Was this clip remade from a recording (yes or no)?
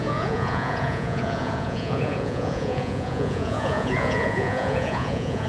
yes